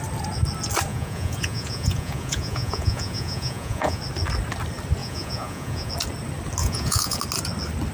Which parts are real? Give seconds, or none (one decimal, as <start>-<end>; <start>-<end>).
0.0-0.9; 4.0-5.0; 5.9-6.6; 7.2-7.9